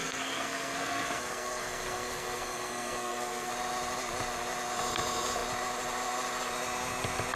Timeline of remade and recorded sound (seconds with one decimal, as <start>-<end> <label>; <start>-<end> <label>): 0.0-3.5 remade; 3.5-7.4 recorded